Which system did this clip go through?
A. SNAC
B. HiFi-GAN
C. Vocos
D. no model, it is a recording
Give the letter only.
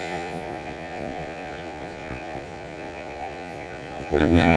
C